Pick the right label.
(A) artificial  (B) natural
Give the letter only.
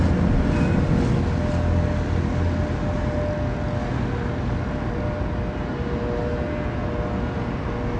B